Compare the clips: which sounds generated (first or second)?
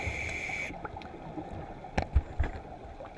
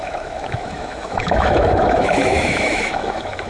second